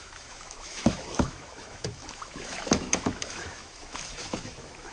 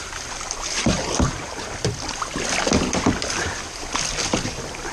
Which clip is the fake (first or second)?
first